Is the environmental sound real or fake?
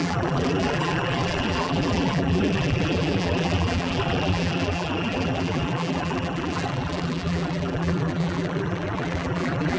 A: fake